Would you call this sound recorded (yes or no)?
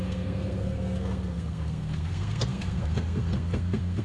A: no